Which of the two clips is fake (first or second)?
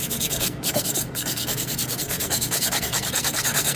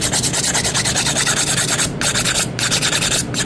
first